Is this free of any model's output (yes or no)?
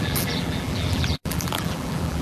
no